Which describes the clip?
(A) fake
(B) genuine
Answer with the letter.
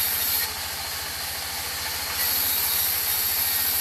B